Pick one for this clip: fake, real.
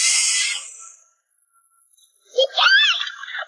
real